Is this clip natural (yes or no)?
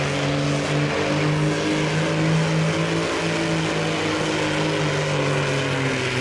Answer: yes